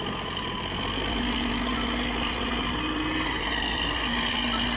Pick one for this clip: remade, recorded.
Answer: recorded